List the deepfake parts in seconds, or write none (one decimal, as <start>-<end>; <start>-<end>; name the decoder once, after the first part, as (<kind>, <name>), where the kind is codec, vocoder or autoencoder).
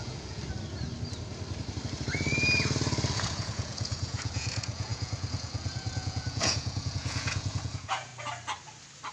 0.0-0.4 (vocoder, Vocos); 3.1-8.1